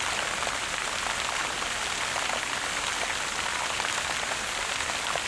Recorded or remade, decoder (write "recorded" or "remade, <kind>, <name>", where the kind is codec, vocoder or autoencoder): recorded